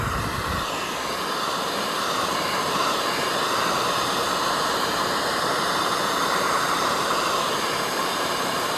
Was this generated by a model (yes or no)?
yes